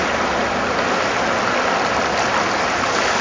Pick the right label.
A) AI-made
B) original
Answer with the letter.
B